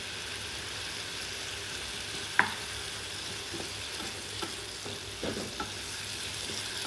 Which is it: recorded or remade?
recorded